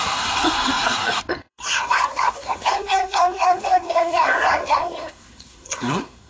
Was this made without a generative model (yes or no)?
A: no